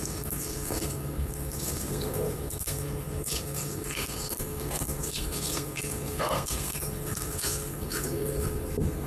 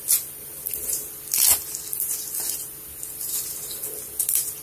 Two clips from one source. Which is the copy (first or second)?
first